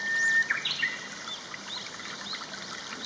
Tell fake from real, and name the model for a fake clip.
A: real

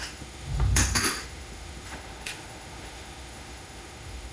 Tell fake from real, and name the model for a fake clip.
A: fake, autoencoder, DAC-VAE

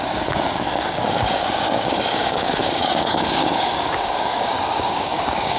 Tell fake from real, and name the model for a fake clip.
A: fake, codec, DAC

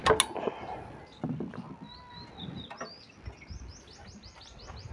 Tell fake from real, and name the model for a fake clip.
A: real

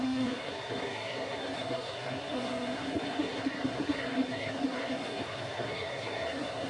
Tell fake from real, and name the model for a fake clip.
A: fake, codec, SNAC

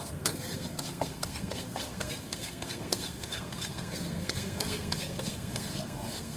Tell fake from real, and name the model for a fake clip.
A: fake, codec, SNAC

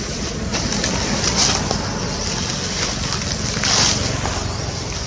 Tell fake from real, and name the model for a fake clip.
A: real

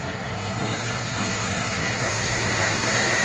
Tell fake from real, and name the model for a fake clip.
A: fake, codec, SNAC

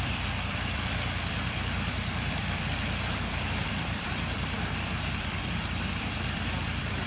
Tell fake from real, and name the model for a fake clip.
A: fake, vocoder, BigVGAN v2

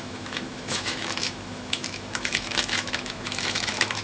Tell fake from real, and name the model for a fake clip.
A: fake, autoencoder, DAC-VAE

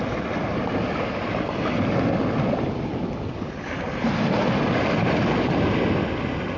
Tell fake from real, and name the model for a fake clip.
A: real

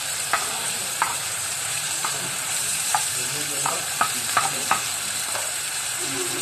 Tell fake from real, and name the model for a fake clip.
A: fake, vocoder, BigVGAN v2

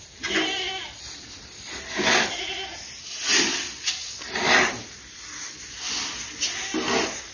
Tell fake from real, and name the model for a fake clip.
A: real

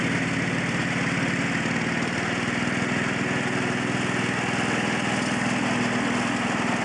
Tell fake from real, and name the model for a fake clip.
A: real